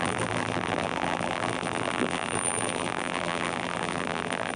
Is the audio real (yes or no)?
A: no